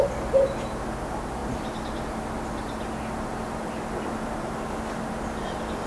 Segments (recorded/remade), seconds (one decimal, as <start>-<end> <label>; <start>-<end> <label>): 0.0-5.9 recorded